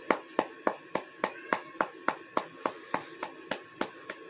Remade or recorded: recorded